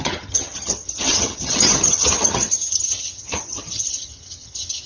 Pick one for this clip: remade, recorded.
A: remade